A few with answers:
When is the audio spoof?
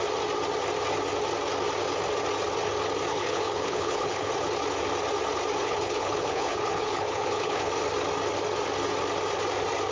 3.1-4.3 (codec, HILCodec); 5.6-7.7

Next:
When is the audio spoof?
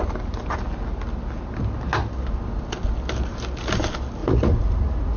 4.2-5.2 (vocoder, Vocos)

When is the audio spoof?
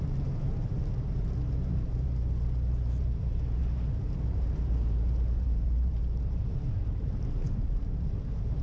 0.0-2.2 (vocoder, BigVGAN v2); 3.0-8.6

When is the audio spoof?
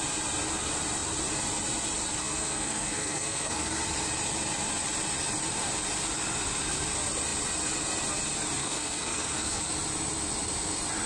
2.2-3.7 (codec, SNAC); 8.6-9.7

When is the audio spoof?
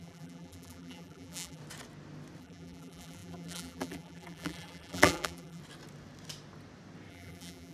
0.0-1.6 (vocoder, BigVGAN v2); 2.4-5.6; 7.1-7.7